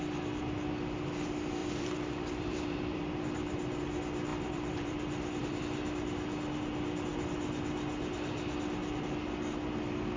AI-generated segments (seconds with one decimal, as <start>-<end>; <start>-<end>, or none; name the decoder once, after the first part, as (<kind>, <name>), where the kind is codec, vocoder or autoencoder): 1.6-3.8 (vocoder, BigVGAN v2); 4.3-5.6